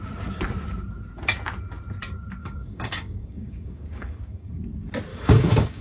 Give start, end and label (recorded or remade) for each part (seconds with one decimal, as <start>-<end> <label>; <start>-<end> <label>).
0.0-2.4 recorded; 2.4-4.5 remade; 4.5-5.1 recorded; 5.1-5.8 remade